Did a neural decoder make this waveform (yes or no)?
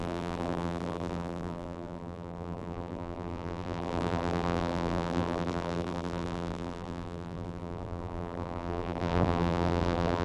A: yes